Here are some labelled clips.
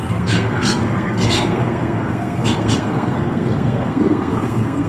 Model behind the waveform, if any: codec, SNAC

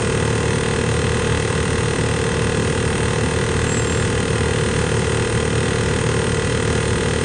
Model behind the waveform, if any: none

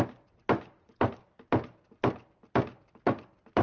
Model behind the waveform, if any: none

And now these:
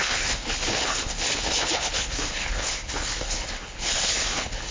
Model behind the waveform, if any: codec, HILCodec